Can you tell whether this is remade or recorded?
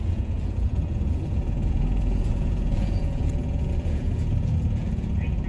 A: remade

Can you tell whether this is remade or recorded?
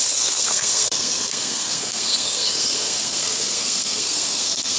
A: remade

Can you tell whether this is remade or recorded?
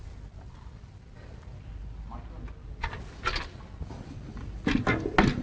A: recorded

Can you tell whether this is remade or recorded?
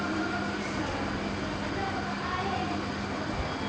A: recorded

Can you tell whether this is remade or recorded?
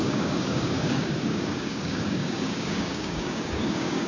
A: remade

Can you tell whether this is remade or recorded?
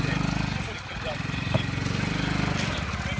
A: recorded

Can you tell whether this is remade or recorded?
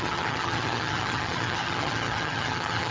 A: remade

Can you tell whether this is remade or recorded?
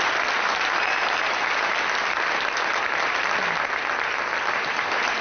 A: recorded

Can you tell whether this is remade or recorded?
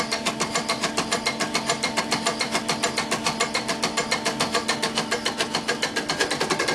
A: recorded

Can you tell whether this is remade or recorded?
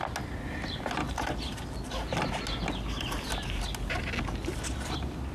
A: recorded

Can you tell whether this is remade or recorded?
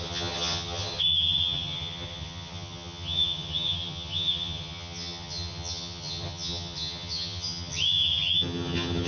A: remade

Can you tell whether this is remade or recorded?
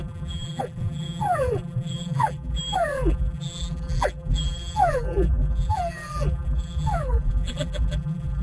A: remade